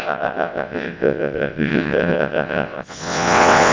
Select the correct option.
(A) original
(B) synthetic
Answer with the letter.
B